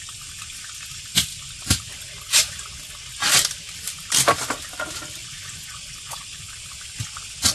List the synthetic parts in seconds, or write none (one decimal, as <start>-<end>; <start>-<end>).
5.2-6.5